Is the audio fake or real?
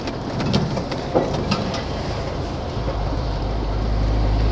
fake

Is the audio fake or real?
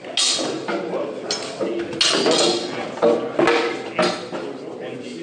real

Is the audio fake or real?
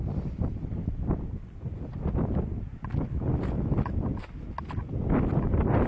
real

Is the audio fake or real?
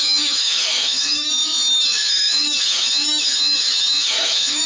fake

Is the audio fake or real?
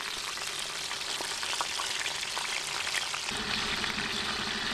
real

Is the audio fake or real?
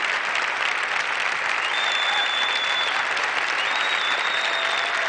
real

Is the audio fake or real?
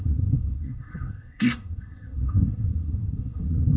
fake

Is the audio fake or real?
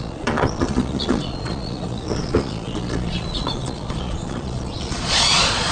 fake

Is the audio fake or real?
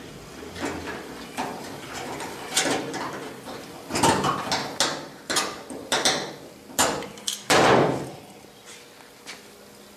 real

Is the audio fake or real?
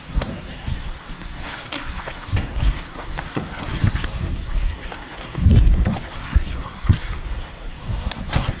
fake